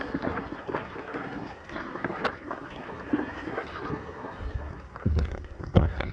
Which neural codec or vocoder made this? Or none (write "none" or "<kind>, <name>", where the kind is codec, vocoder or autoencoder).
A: codec, SNAC